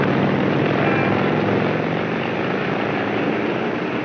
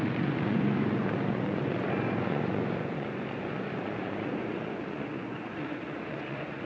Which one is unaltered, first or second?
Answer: first